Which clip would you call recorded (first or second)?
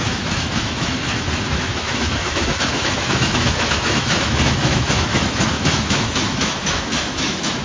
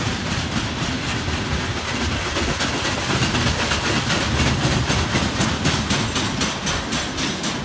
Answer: second